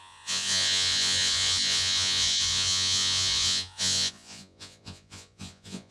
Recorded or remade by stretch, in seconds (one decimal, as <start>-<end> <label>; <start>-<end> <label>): 0.0-5.9 remade